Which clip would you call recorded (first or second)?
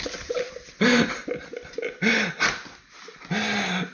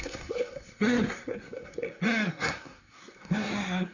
first